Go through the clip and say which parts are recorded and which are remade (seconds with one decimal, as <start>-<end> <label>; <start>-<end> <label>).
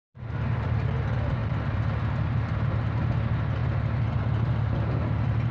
0.0-5.5 recorded